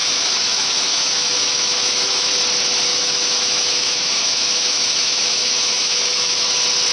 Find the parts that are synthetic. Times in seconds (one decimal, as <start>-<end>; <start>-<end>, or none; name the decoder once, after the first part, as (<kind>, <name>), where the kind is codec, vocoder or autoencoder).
0.0-2.3 (autoencoder, DAC-VAE); 2.9-6.5